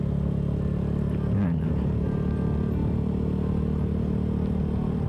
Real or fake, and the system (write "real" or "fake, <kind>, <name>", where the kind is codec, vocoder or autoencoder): real